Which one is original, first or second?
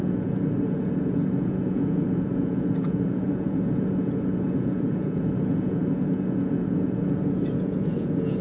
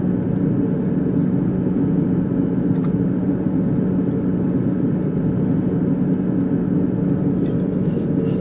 second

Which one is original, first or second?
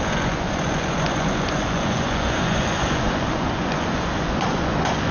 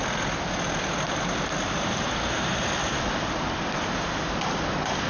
second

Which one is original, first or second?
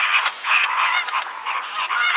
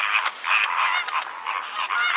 second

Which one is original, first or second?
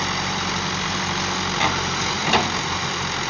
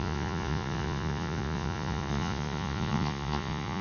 first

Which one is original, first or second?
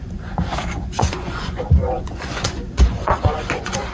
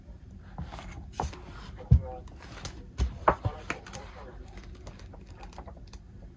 second